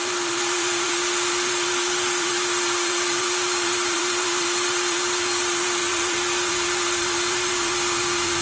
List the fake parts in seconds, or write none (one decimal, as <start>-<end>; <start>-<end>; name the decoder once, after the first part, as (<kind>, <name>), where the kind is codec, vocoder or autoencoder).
0.0-8.4 (vocoder, BigVGAN v2)